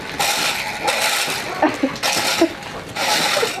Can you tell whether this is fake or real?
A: real